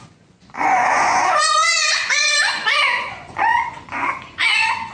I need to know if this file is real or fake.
fake